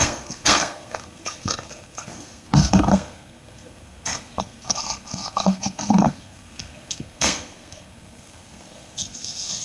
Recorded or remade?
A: remade